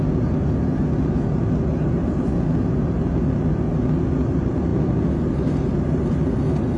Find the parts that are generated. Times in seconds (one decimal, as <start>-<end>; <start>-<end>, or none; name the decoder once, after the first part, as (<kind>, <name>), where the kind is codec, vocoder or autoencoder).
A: none